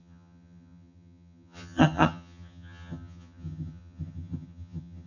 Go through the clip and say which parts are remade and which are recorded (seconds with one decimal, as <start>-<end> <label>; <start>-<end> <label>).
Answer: 0.0-5.1 remade